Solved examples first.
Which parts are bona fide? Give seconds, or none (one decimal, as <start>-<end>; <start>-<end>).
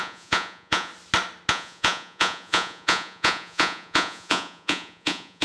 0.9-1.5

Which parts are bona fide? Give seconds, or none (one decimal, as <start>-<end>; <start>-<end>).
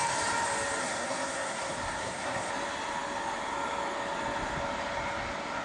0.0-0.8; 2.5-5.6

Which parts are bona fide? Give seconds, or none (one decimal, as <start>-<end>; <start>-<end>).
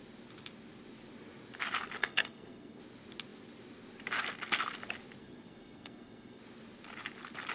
0.0-2.0; 2.8-5.2; 6.4-7.5